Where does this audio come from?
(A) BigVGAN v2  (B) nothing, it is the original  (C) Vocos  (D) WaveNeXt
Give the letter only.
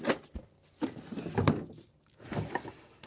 B